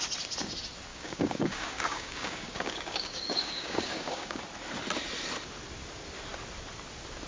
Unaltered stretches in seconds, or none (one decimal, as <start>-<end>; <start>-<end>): 0.0-0.9; 4.4-7.3